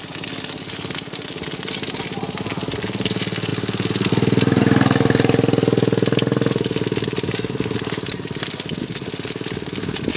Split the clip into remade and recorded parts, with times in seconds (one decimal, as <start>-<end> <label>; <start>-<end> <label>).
0.0-10.2 recorded